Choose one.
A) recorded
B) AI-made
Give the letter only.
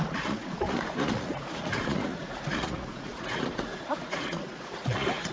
B